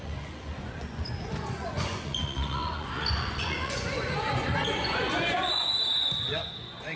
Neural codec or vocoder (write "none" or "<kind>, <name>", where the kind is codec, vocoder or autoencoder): vocoder, Vocos